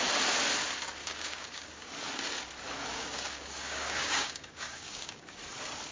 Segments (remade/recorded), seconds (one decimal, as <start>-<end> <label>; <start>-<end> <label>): 0.0-1.0 recorded; 1.0-1.9 remade; 1.9-2.9 recorded; 2.9-5.4 remade; 5.4-5.9 recorded